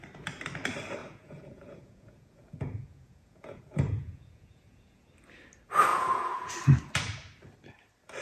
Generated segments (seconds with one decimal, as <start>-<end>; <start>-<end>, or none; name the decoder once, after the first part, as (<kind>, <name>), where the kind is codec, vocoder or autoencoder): 1.0-5.1 (vocoder, Vocos); 5.9-6.5